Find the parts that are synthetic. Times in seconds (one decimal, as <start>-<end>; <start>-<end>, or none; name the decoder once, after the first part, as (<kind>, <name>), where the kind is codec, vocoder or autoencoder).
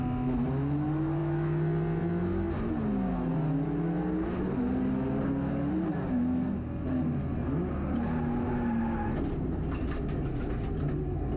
none